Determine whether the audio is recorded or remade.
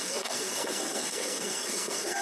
remade